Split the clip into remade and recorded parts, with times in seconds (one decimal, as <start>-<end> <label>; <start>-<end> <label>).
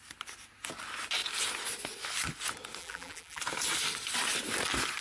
0.0-2.8 recorded; 2.8-3.4 remade; 3.4-5.0 recorded